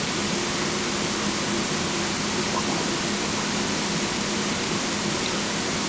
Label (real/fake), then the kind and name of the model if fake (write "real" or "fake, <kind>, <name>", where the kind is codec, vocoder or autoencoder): real